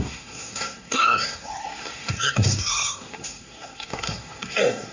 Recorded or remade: remade